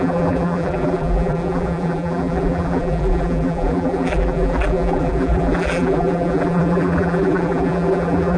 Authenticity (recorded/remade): remade